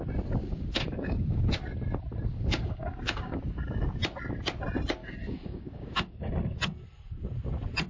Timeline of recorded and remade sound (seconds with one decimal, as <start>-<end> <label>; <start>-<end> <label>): 0.0-0.4 recorded; 0.4-1.5 remade; 1.5-2.3 recorded; 2.3-3.4 remade; 3.4-5.0 recorded; 5.0-6.3 remade; 6.3-7.9 recorded